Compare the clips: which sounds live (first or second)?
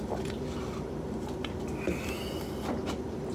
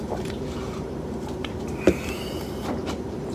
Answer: first